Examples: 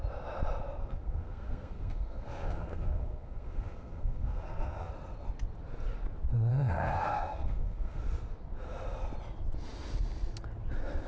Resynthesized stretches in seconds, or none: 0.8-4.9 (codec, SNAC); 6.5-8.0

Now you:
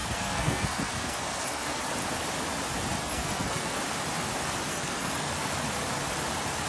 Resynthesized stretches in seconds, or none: 0.0-1.8 (codec, SNAC); 3.0-3.8; 4.7-5.3

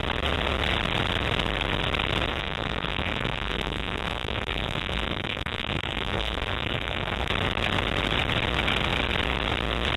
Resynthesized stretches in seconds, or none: 2.3-7.3 (codec, SNAC)

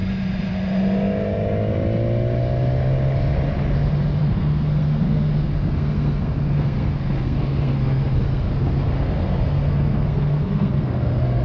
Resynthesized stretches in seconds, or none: 4.2-11.4 (codec, SNAC)

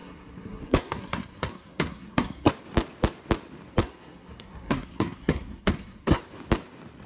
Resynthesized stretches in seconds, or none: 0.0-2.5 (codec, SNAC); 3.8-6.2

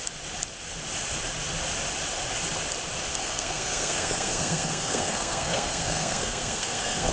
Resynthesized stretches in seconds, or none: 3.1-7.1 (codec, SNAC)

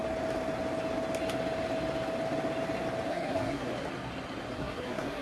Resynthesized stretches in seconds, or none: 3.1-3.7 (codec, SNAC); 4.5-5.2

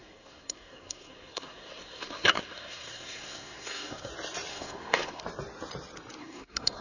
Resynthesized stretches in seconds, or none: 0.0-4.1 (codec, SNAC); 4.5-5.2; 6.2-6.8